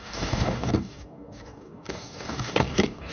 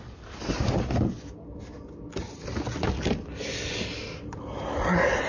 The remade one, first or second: first